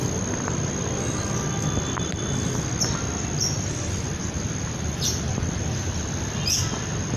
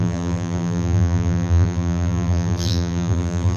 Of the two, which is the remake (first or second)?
second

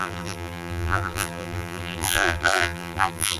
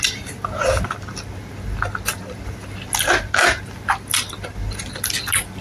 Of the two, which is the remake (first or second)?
first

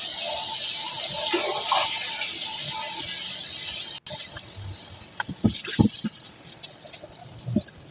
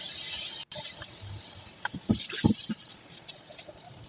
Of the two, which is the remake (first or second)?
second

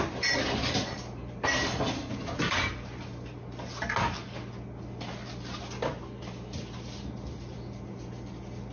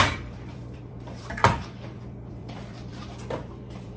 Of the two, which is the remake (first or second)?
second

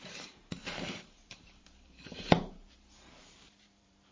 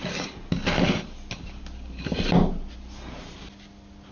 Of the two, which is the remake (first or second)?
first